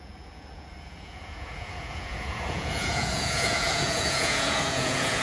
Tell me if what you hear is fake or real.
fake